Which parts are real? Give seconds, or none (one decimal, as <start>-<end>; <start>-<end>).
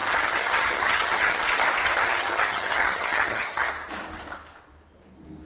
1.4-1.9; 3.7-5.5